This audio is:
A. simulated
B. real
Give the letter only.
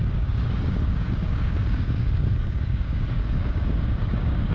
A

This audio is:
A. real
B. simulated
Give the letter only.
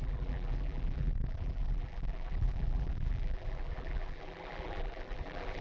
B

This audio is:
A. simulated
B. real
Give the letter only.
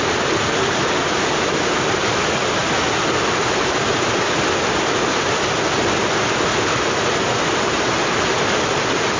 B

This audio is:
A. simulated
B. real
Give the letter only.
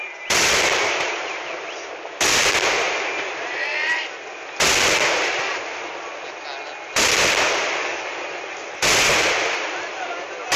B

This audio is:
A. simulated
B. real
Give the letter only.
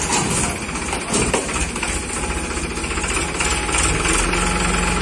B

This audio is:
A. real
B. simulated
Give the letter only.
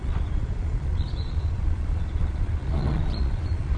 B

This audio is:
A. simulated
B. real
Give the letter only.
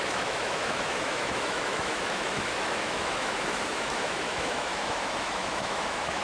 A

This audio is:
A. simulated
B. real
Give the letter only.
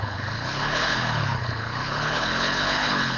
A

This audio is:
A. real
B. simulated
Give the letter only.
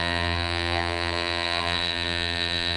B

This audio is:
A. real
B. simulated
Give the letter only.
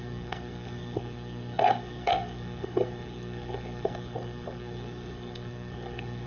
B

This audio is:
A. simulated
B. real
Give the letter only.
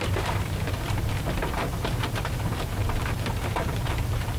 A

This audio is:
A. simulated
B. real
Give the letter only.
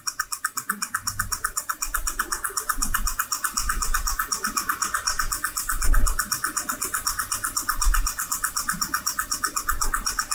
B